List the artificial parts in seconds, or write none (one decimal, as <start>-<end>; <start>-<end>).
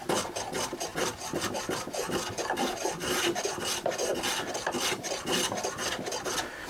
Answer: none